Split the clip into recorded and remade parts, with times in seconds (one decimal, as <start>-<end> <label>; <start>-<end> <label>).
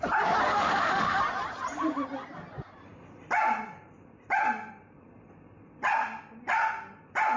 0.0-0.5 recorded; 0.5-1.2 remade; 1.2-7.4 recorded